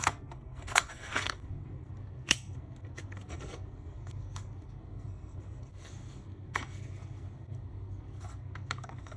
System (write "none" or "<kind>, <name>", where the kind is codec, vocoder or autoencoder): codec, SNAC